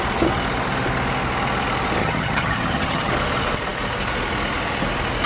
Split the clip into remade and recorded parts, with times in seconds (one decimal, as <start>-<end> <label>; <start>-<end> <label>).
0.0-2.0 recorded; 2.0-3.1 remade; 3.1-5.3 recorded